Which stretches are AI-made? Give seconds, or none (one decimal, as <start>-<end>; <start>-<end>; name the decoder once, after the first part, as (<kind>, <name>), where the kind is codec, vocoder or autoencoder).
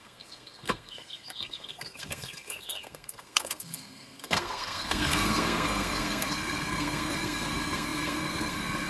0.0-8.9 (codec, SNAC)